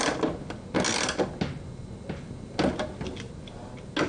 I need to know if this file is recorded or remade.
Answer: recorded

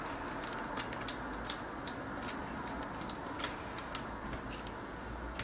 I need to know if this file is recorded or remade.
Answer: recorded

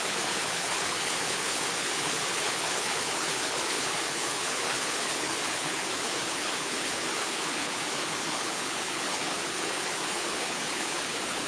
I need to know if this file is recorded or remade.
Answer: remade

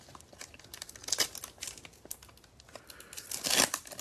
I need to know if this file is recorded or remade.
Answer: recorded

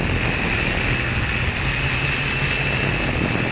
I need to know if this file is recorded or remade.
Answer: recorded